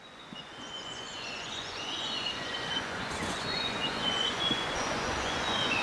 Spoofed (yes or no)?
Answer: yes